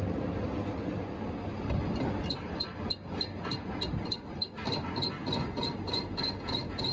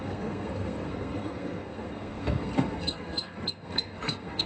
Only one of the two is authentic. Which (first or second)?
first